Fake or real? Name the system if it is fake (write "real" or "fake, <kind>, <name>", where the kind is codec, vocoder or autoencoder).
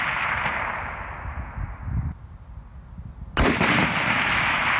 real